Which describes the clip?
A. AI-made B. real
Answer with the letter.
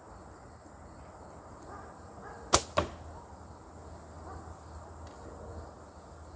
B